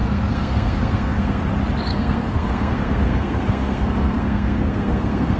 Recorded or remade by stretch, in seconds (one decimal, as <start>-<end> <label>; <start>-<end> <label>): 0.0-1.4 remade; 1.4-1.9 recorded; 1.9-5.4 remade